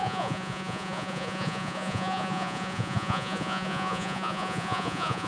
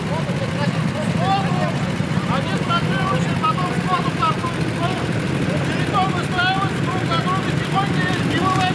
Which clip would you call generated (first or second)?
first